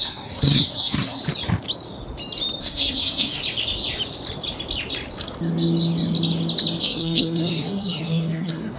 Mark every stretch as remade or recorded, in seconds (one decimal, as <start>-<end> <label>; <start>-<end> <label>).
0.0-1.2 remade; 1.2-2.6 recorded; 2.6-3.4 remade; 3.4-6.8 recorded; 6.8-8.8 remade